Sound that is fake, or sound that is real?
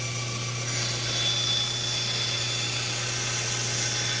real